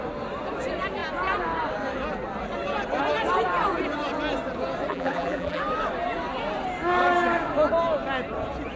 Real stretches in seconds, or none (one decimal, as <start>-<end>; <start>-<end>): 0.0-4.9; 5.6-8.8